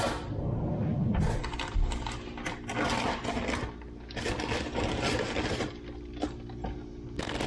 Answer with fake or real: real